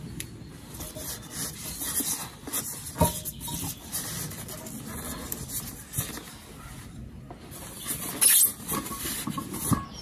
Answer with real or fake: real